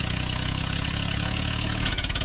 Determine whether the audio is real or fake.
fake